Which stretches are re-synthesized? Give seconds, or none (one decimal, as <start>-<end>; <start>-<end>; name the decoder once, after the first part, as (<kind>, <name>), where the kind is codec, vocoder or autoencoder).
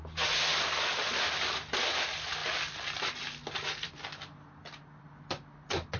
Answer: none